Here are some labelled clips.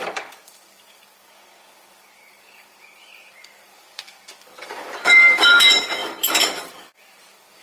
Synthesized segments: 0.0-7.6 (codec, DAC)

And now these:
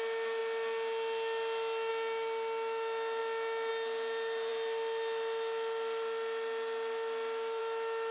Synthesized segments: none